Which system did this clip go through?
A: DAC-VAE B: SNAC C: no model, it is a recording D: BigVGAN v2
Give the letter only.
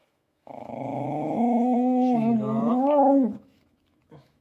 A